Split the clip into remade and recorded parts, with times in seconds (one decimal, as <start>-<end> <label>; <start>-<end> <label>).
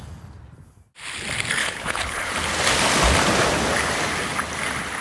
0.0-1.6 recorded; 1.6-2.3 remade; 2.3-5.0 recorded